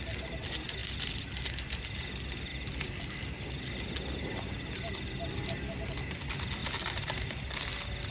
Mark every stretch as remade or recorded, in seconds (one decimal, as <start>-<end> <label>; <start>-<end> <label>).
0.0-6.6 recorded; 6.6-7.6 remade; 7.6-8.1 recorded